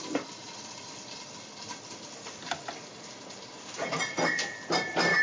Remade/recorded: remade